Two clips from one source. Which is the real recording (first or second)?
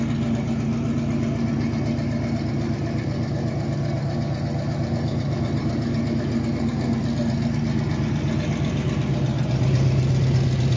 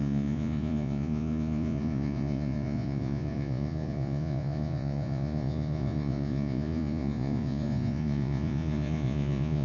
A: first